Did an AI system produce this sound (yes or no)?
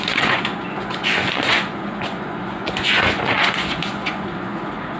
yes